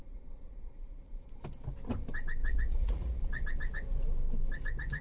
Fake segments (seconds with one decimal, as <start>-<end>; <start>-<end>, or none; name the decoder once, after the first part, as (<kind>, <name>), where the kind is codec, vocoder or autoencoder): 0.0-1.3 (vocoder, Vocos); 2.4-3.2